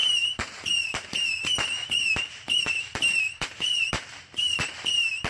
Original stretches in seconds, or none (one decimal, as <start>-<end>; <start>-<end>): none